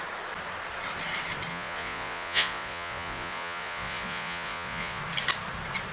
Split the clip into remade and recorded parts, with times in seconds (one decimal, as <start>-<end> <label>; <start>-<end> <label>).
0.0-1.5 recorded; 1.5-5.0 remade; 5.0-5.9 recorded